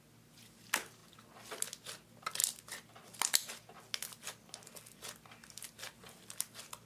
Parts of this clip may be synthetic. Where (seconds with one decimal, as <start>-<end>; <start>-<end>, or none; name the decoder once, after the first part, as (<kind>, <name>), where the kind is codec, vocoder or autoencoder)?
none